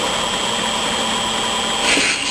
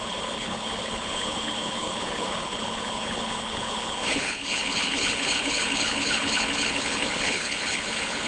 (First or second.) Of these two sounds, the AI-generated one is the second